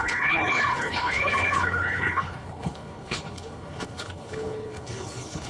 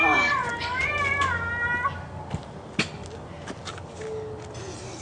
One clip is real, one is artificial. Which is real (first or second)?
second